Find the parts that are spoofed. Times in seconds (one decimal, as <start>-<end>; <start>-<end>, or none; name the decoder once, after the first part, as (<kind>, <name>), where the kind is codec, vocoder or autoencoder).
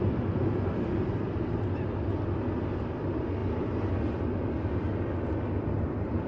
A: none